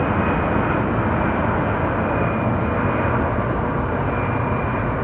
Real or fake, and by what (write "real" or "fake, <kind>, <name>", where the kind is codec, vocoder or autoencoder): real